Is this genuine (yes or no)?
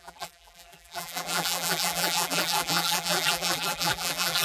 no